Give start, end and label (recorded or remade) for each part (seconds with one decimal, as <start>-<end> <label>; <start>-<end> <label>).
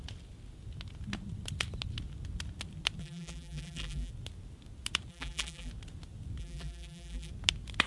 0.0-3.0 recorded; 3.0-4.1 remade; 4.1-5.1 recorded; 5.1-5.7 remade; 5.7-6.4 recorded; 6.4-7.3 remade; 7.3-7.9 recorded